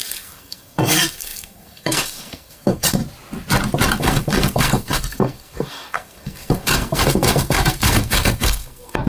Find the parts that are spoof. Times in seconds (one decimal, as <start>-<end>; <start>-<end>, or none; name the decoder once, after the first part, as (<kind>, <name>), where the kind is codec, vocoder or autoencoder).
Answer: 0.0-3.0 (codec, SNAC); 4.0-9.1